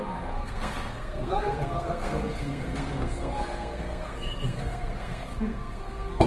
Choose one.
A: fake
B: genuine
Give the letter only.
A